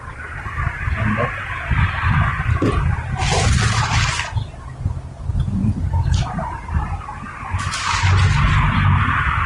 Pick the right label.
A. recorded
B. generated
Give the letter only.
A